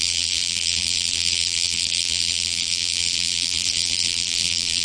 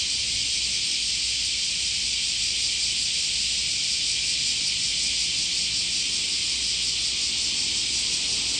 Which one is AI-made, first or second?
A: first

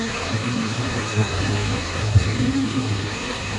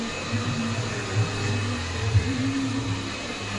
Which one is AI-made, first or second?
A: first